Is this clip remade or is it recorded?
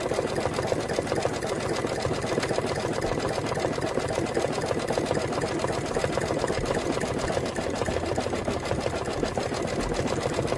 recorded